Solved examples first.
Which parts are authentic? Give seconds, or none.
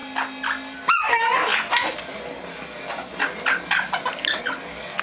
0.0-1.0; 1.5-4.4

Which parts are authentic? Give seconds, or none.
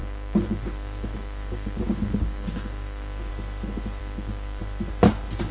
3.3-4.0; 4.6-5.5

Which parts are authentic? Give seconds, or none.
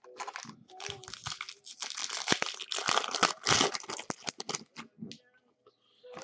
0.0-6.2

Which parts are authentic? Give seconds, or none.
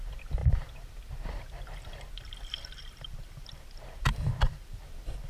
0.0-5.3